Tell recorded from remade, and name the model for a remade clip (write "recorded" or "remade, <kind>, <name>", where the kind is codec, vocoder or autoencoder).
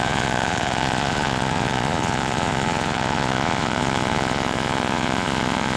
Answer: remade, vocoder, Vocos